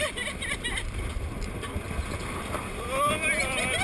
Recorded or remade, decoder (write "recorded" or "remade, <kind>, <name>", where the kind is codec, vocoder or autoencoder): remade, vocoder, BigVGAN v2